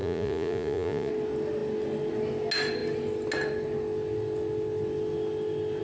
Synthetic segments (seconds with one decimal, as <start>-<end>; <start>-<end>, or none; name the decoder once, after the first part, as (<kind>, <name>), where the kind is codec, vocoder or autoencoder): 0.0-1.1 (vocoder, Vocos)